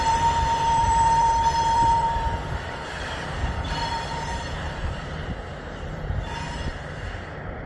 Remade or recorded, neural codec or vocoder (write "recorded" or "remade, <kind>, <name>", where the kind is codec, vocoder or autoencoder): remade, vocoder, BigVGAN v2